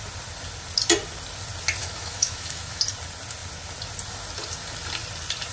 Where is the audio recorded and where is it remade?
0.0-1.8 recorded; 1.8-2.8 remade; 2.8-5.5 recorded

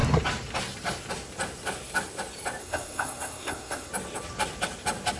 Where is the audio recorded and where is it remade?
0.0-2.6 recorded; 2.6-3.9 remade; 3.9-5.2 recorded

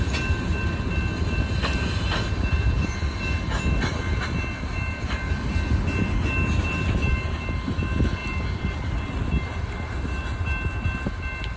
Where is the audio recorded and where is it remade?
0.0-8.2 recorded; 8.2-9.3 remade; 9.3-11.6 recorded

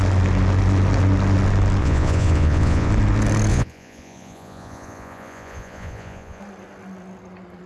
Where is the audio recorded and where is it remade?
0.0-1.8 recorded; 1.8-2.9 remade; 2.9-3.5 recorded; 3.5-6.4 remade; 6.4-7.7 recorded

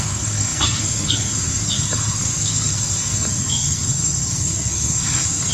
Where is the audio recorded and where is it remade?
0.0-5.5 remade

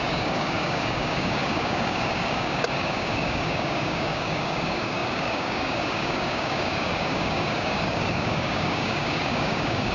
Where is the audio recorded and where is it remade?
0.0-9.9 remade

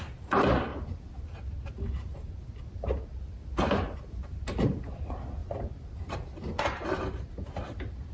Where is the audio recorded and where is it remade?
0.0-8.1 recorded